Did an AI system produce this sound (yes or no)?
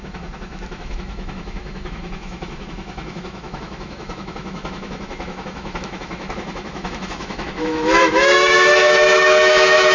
yes